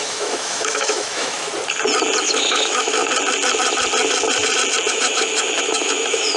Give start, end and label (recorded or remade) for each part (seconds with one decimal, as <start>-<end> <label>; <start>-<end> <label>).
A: 0.0-1.5 remade; 1.5-2.2 recorded; 2.2-3.0 remade; 3.0-4.9 recorded; 4.9-6.4 remade